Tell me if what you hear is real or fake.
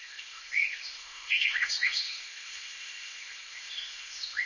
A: fake